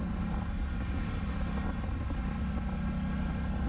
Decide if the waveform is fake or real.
real